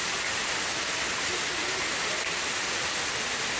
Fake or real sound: real